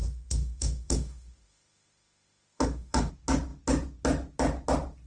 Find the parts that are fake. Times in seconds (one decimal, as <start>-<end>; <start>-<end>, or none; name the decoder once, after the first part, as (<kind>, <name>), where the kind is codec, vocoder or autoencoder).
0.0-3.1 (autoencoder, DAC-VAE)